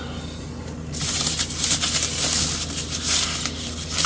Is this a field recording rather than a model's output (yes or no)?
yes